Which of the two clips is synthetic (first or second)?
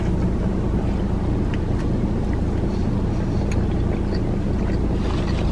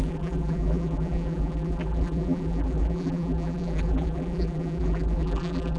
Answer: second